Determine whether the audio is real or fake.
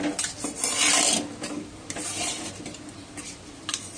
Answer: real